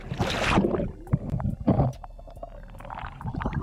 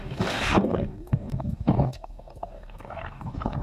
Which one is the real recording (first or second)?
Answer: first